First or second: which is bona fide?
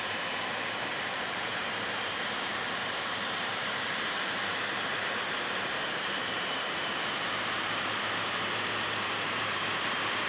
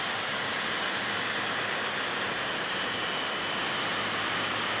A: second